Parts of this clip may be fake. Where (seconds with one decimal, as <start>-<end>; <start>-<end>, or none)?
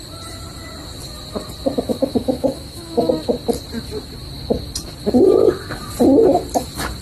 1.9-3.1